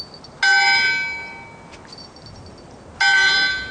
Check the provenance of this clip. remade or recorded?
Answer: recorded